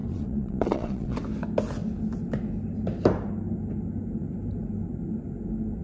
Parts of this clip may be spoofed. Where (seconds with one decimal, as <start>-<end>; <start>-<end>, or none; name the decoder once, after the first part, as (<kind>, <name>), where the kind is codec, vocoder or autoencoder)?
0.0-1.2 (vocoder, Vocos)